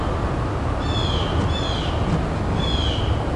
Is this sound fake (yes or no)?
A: no